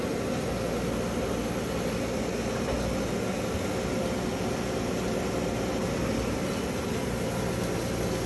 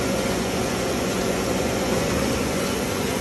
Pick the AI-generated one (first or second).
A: second